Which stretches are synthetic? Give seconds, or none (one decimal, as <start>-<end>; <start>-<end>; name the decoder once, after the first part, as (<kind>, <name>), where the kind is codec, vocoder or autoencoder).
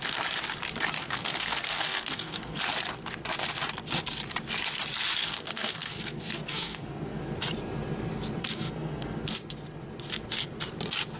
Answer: 1.0-2.6 (codec, SNAC); 5.2-7.2; 8.4-9.3